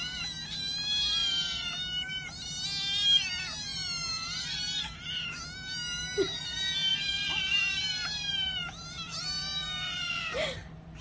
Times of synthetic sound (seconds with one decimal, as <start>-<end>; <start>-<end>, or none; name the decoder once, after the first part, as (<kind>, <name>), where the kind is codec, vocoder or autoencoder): 1.2-2.0 (vocoder, BigVGAN v2); 3.7-5.0; 6.9-11.0